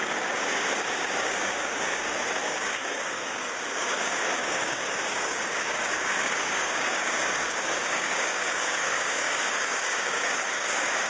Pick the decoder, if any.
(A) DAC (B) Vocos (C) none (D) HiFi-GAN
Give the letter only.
A